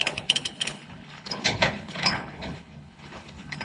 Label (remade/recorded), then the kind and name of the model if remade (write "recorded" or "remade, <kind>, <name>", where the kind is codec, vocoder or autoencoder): remade, codec, HILCodec